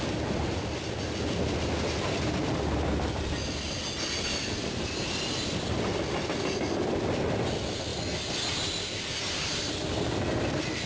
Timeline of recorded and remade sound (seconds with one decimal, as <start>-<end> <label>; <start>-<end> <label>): 0.0-10.9 recorded